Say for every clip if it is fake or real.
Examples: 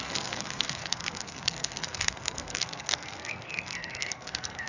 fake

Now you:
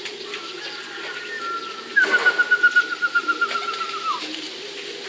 real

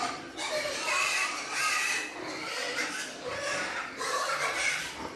fake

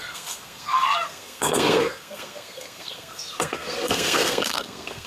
fake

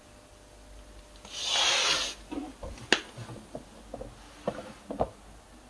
real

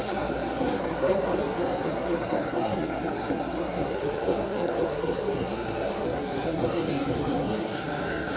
fake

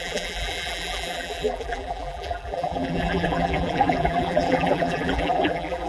fake